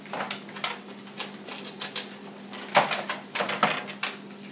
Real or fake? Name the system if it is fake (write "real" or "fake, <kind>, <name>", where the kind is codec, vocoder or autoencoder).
real